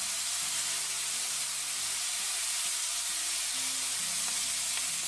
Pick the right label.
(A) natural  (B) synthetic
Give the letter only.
A